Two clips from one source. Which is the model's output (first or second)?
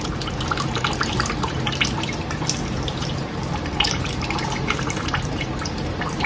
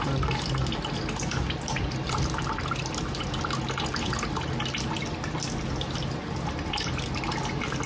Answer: first